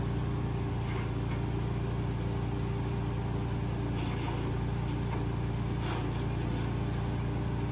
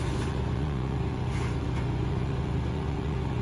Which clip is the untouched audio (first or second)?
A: first